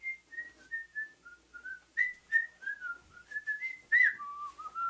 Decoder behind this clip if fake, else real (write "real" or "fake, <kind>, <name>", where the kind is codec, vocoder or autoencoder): real